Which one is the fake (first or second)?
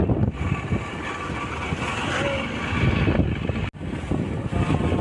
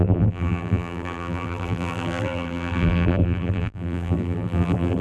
second